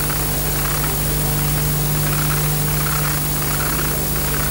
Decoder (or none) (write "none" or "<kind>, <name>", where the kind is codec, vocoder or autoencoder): none